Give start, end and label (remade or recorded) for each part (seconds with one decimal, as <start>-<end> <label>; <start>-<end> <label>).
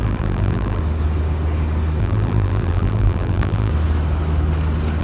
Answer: 0.0-0.8 remade; 0.8-2.0 recorded; 2.0-3.7 remade; 3.7-5.0 recorded